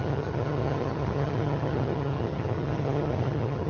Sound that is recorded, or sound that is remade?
remade